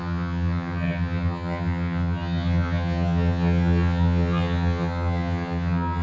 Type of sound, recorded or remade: remade